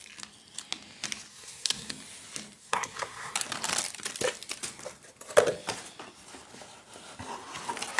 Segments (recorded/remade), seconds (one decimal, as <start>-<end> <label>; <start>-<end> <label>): 0.0-1.3 recorded; 1.3-1.9 remade; 1.9-2.6 recorded; 2.6-3.3 remade; 3.3-8.0 recorded